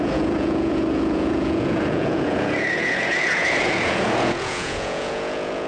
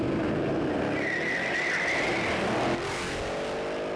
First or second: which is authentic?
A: second